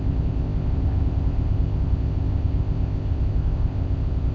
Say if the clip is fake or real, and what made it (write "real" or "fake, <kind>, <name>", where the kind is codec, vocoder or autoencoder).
fake, codec, ZipCodec